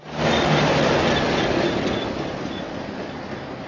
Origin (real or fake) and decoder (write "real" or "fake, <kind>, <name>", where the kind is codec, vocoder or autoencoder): real